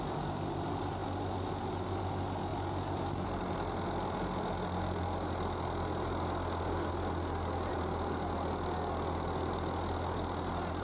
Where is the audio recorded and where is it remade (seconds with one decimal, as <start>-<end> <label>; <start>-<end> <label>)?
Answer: 0.0-10.8 recorded